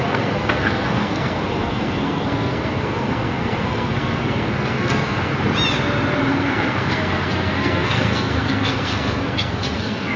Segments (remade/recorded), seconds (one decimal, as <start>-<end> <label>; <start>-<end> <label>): 0.0-5.3 remade; 5.3-6.3 recorded; 6.3-10.2 remade